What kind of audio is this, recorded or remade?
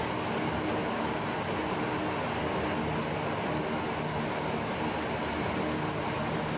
recorded